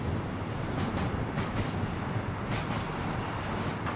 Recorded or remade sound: recorded